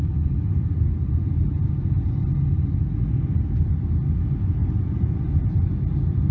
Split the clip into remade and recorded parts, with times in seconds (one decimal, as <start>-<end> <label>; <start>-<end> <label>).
0.0-4.6 recorded; 4.6-5.5 remade; 5.5-6.3 recorded

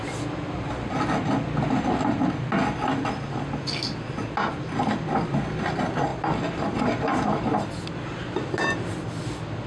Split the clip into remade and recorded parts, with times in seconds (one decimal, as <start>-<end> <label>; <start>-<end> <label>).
0.0-9.7 recorded

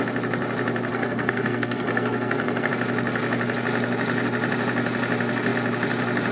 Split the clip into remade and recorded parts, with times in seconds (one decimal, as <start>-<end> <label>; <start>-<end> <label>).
0.0-0.9 recorded; 0.9-2.7 remade; 2.7-6.3 recorded

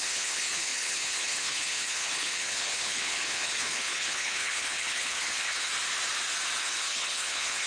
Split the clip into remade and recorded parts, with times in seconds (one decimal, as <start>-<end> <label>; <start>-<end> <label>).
0.0-5.7 remade; 5.7-6.6 recorded; 6.6-7.7 remade

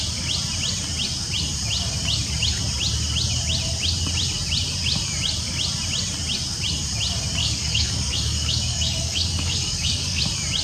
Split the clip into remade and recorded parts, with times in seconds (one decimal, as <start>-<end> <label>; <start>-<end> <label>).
0.0-7.4 recorded; 7.4-10.2 remade; 10.2-10.6 recorded

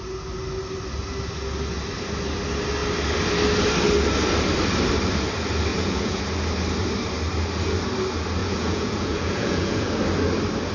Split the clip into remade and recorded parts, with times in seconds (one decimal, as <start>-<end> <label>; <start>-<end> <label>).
0.0-5.7 recorded; 5.7-6.2 remade; 6.2-8.4 recorded; 8.4-10.0 remade; 10.0-10.7 recorded